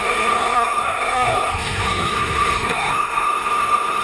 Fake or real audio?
fake